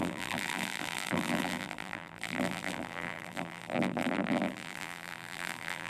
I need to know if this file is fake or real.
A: fake